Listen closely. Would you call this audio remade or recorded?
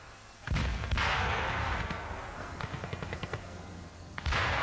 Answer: remade